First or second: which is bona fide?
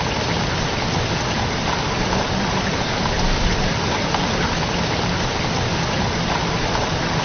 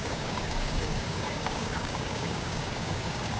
first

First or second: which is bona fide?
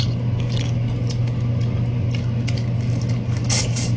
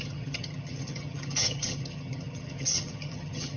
first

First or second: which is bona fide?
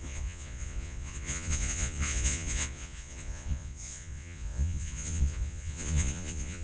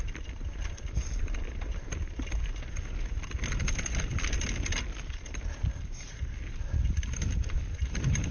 second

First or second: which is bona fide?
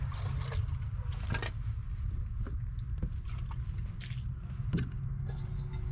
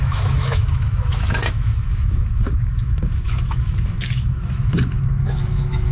first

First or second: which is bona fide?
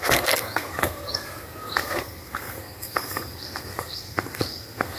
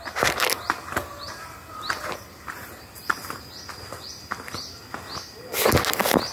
second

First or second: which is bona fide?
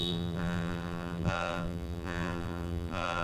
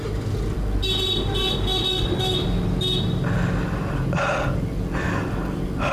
second